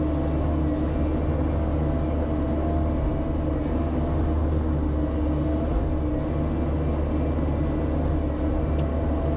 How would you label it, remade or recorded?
recorded